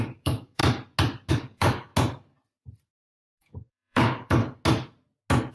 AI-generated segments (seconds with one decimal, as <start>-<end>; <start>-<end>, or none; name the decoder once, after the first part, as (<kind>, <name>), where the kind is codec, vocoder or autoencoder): 0.0-0.6 (codec, DAC); 1.3-1.9; 2.9-4.4